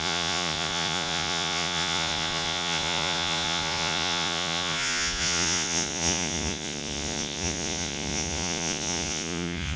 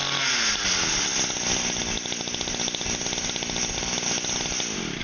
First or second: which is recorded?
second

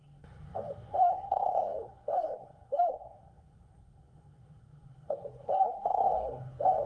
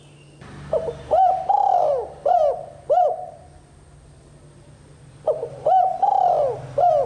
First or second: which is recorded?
second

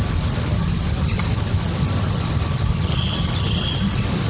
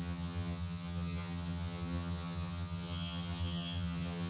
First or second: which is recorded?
first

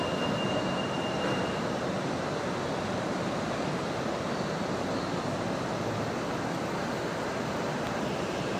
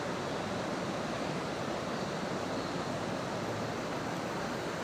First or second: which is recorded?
first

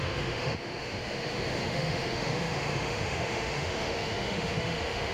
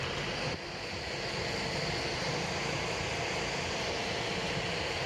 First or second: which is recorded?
second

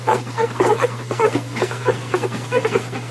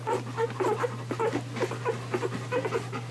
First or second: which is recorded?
second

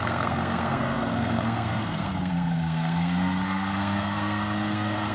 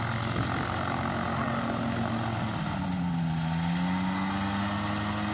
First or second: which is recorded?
second